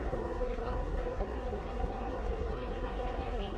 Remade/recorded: remade